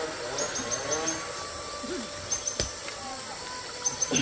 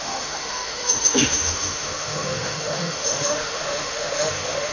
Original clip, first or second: first